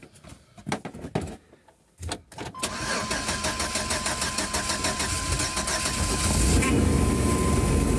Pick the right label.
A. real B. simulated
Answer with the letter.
A